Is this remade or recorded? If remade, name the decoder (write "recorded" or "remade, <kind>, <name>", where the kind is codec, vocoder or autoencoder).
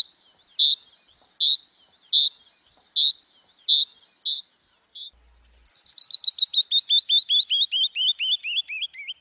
recorded